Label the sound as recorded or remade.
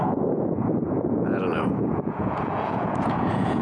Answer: remade